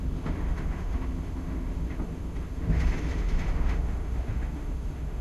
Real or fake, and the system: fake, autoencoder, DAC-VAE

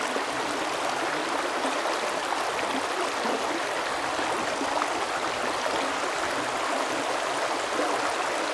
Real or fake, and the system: real